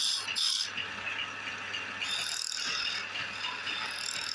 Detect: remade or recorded recorded